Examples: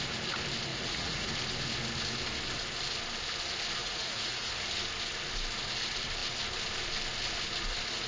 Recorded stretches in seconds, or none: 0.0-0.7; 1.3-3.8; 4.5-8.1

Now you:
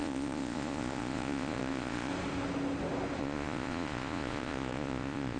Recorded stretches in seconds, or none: 2.1-3.2

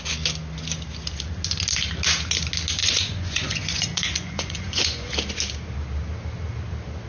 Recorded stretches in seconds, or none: 0.0-2.8; 5.1-7.1

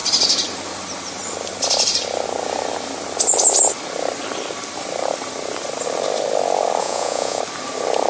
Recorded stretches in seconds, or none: 0.0-6.8; 7.4-8.1

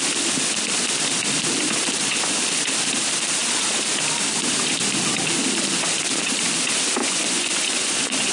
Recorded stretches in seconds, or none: 0.0-7.0

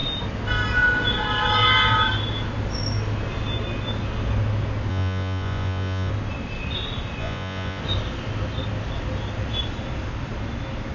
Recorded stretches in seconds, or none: 0.0-4.9; 6.1-7.2; 7.8-10.9